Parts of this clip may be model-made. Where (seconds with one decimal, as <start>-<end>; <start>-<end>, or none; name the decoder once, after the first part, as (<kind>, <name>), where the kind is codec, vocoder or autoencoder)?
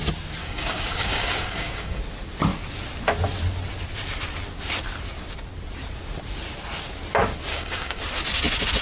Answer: 0.4-2.0 (codec, DAC); 7.5-8.0